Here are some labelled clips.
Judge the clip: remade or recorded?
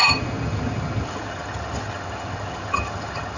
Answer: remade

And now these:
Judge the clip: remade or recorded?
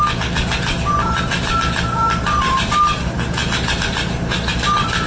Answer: recorded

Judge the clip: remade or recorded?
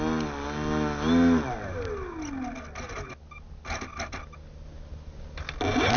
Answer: recorded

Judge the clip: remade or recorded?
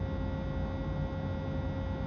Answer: recorded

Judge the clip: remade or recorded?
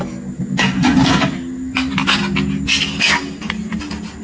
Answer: recorded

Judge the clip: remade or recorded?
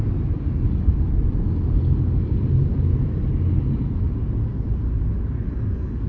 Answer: recorded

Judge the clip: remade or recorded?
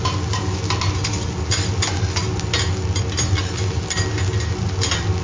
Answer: recorded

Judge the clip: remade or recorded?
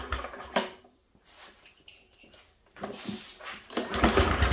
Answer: recorded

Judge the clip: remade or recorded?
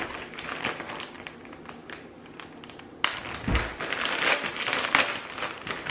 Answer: recorded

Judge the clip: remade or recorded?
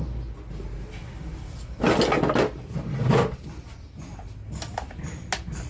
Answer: recorded